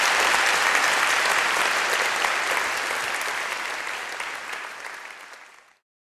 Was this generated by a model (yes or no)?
no